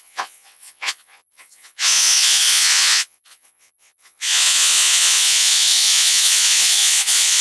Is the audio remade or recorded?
remade